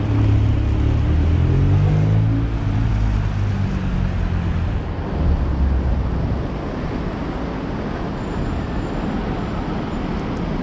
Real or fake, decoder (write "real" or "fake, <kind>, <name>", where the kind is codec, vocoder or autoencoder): real